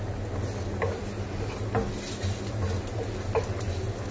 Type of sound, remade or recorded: recorded